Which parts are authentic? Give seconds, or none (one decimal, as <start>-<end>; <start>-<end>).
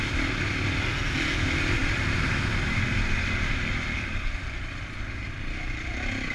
0.0-6.3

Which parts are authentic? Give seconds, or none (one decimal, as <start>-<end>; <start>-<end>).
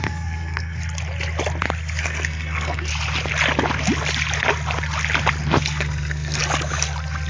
0.8-2.0; 2.9-5.8; 6.4-7.3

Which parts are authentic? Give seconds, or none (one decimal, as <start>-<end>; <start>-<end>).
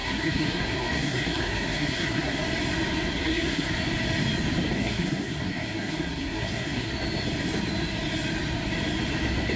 2.4-3.1; 3.7-4.8; 6.9-9.6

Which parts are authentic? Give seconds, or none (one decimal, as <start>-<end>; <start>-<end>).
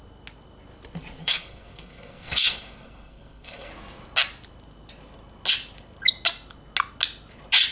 0.0-1.2; 3.7-7.7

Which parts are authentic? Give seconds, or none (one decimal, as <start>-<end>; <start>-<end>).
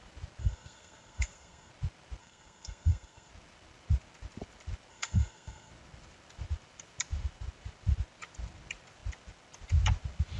0.0-0.4; 1.7-2.2; 3.3-4.9; 5.7-10.4